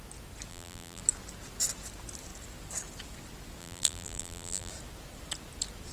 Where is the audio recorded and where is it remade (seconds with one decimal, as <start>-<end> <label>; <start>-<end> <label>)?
0.0-0.5 recorded; 0.5-1.0 remade; 1.0-3.6 recorded; 3.6-4.7 remade; 4.7-5.9 recorded